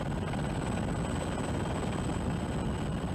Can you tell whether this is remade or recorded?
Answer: recorded